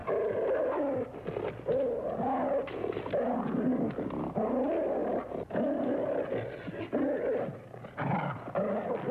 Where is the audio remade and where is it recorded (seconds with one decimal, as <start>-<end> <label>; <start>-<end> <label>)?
0.0-0.6 remade; 0.6-9.1 recorded